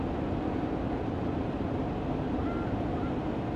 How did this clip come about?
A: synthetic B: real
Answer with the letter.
B